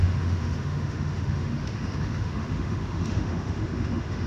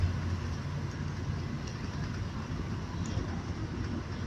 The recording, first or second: second